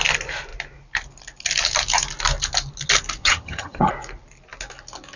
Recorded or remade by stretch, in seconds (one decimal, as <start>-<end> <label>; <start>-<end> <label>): 0.0-3.2 recorded; 3.2-3.9 remade; 3.9-5.2 recorded